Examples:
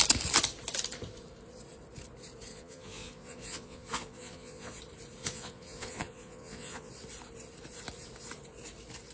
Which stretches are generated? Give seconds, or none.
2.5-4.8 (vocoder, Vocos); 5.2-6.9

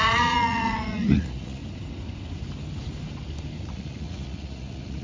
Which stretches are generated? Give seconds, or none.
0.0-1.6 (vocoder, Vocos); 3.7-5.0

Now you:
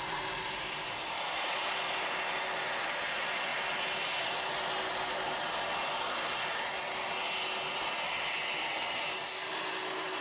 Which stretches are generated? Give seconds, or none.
none

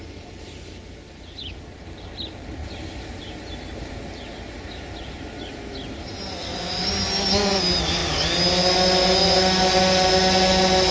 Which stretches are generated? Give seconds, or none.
none

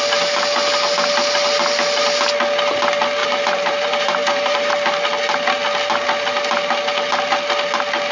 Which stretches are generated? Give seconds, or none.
3.2-4.7 (vocoder, BigVGAN v2)